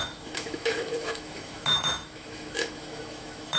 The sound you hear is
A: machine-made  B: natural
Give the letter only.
A